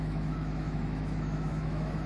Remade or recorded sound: remade